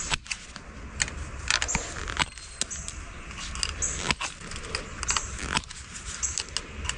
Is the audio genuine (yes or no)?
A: yes